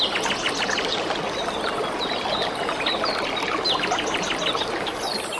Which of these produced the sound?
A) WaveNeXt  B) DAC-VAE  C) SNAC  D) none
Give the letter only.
D